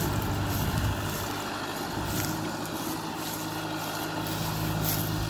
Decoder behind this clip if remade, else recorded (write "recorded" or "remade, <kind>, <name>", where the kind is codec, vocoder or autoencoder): recorded